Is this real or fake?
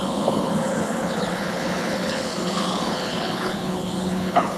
fake